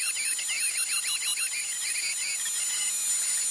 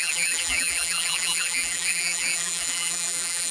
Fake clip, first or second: second